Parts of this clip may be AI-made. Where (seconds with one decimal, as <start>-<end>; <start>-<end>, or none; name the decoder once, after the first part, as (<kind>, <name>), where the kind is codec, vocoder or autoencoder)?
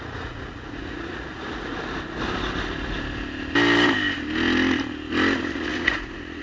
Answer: 0.0-1.7 (vocoder, Vocos); 5.5-6.4